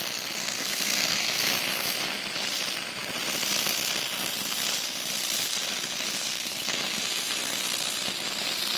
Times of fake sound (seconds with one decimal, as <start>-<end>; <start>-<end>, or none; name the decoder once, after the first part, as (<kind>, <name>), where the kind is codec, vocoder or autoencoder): 0.4-1.4 (codec, SNAC); 6.3-7.0